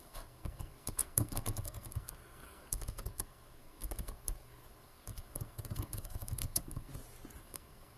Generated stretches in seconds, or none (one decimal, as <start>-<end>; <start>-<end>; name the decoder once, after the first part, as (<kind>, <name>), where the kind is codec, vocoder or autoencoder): 0.0-6.9 (codec, SNAC); 7.4-8.0